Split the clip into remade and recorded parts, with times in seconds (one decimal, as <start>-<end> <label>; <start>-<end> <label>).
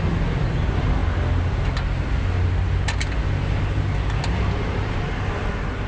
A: 0.0-5.9 recorded